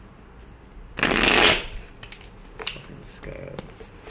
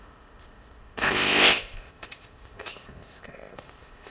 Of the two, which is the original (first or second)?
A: first